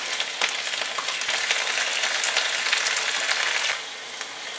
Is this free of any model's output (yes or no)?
yes